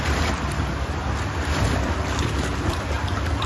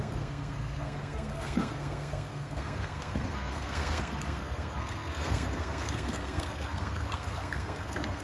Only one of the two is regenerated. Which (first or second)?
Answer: second